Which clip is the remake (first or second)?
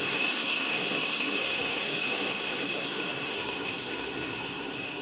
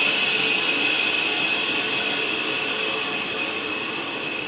first